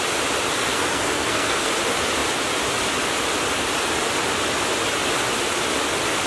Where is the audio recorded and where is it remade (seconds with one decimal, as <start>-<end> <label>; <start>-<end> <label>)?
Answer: 0.0-0.6 recorded; 0.6-1.7 remade; 1.7-6.3 recorded